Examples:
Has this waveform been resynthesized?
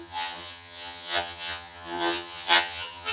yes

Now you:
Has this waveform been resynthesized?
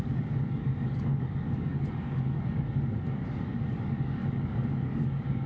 yes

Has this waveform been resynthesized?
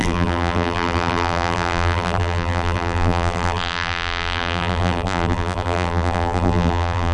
yes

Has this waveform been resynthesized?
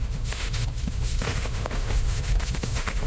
yes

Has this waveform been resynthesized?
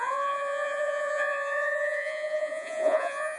yes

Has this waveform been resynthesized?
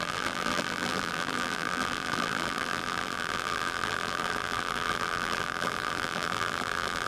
yes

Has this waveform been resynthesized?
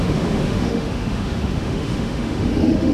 yes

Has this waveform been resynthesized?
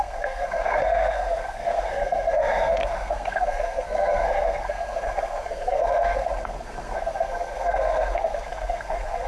yes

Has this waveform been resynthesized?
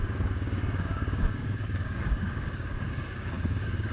yes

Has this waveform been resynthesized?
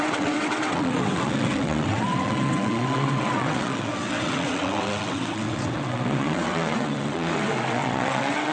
yes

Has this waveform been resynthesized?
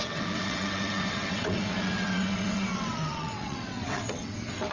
yes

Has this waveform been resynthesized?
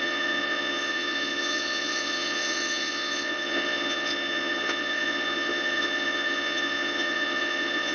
yes